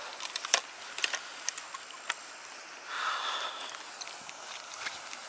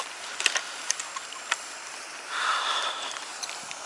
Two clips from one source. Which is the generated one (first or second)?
second